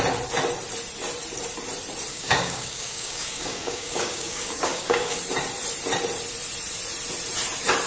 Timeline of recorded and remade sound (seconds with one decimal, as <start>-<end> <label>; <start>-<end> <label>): 0.0-2.1 recorded; 2.1-5.2 remade; 5.2-7.9 recorded